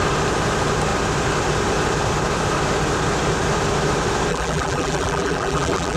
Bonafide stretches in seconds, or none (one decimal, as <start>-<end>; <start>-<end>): 0.0-4.3